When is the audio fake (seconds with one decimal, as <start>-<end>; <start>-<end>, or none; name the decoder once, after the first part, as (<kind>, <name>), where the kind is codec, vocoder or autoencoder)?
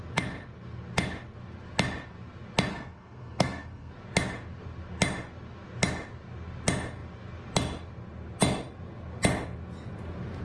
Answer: 2.7-3.9 (codec, SNAC)